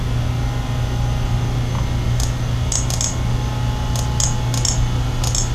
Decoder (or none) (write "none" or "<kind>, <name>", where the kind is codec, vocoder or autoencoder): none